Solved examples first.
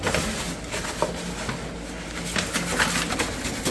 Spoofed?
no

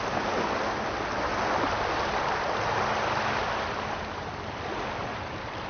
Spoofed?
no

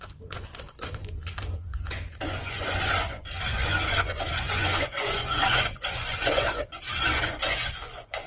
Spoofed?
yes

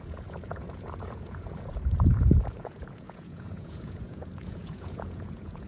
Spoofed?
yes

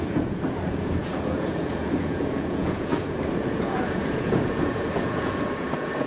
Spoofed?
yes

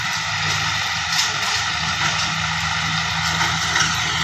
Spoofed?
no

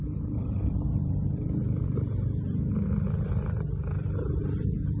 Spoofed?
yes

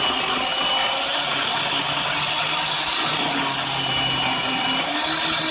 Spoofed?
no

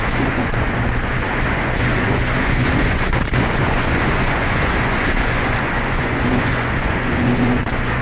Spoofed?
yes